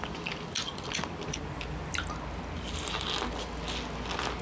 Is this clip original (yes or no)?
yes